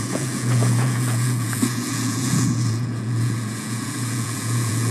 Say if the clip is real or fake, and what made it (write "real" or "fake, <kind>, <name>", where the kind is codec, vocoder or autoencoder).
fake, vocoder, Vocos